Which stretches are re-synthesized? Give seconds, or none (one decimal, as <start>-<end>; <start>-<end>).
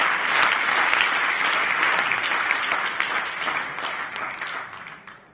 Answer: 2.2-3.4